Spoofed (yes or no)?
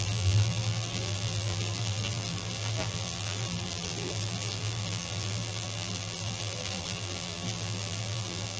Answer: yes